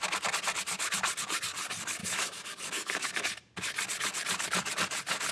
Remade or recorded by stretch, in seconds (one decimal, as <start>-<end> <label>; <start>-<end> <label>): 0.0-2.0 recorded; 2.0-3.2 remade; 3.2-5.3 recorded